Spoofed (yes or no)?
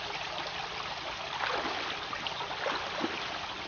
no